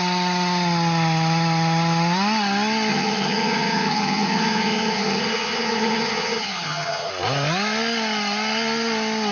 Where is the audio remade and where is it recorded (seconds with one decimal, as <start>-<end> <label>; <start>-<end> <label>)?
0.0-2.9 recorded; 2.9-7.1 remade; 7.1-9.3 recorded